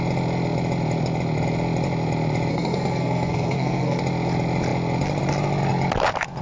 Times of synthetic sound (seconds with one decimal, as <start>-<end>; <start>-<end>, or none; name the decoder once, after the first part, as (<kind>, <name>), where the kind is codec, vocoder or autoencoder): 2.5-4.0 (codec, SNAC)

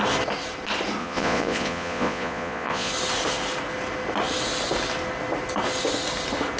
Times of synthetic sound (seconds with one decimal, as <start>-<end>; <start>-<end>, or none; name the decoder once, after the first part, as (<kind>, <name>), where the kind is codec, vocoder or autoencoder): 1.0-2.9 (vocoder, Vocos)

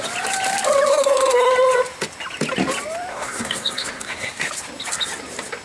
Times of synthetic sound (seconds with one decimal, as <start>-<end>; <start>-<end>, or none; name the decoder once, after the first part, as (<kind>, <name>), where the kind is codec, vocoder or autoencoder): 0.9-1.5 (codec, SNAC); 3.1-4.5

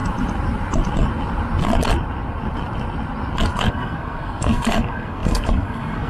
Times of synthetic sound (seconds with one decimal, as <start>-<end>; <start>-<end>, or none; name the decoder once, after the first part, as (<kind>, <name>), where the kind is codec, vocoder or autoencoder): 3.7-6.1 (codec, SNAC)

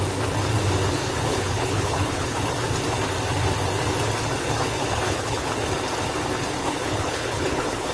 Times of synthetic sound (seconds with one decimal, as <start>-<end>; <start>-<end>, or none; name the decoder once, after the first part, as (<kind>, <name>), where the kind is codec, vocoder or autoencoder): 1.0-2.5 (codec, HILCodec); 4.4-5.5; 6.6-7.9

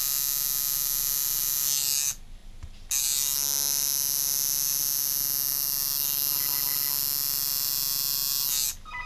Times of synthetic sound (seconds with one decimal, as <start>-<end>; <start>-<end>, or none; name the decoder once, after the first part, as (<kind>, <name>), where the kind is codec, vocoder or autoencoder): none

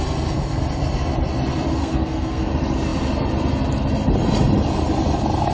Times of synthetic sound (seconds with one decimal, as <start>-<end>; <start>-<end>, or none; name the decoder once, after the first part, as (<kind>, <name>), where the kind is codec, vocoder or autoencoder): 1.8-2.5 (codec, SNAC)